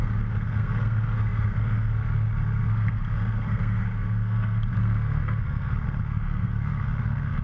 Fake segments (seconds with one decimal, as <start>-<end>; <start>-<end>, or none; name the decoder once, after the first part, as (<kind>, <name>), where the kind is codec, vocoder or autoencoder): 0.0-7.4 (codec, SNAC)